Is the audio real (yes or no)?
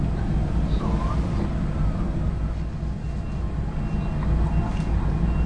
yes